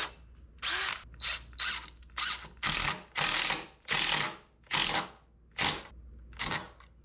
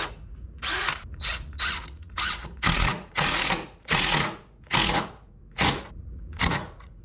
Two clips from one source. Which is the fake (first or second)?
second